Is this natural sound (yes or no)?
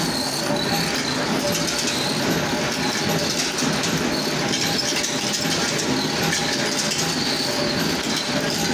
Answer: yes